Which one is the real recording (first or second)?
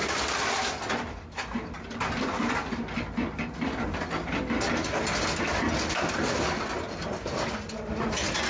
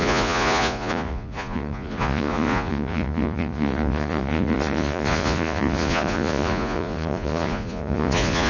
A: first